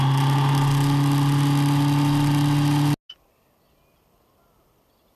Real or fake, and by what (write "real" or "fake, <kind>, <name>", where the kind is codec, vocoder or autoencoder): real